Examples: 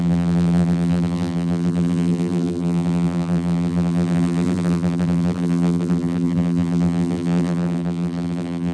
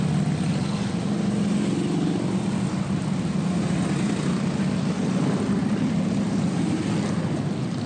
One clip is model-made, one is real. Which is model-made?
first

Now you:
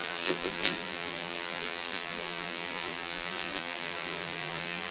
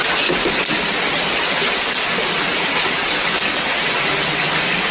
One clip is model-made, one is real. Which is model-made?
first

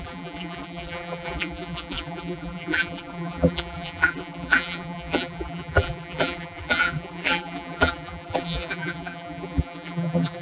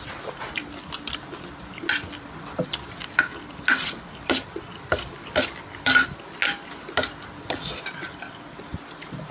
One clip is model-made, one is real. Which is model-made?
first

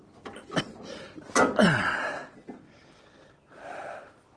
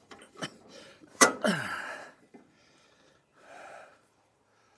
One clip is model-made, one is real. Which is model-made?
second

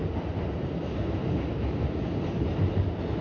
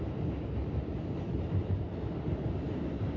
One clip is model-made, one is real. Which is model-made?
second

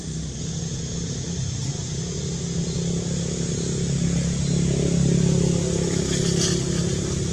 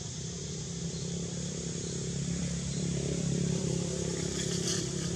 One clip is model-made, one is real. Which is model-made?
second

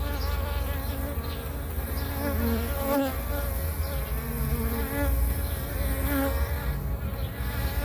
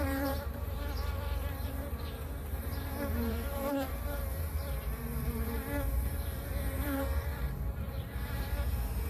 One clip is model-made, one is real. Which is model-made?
second